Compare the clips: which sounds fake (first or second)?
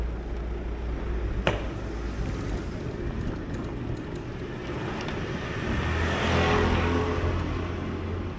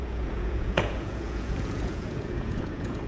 second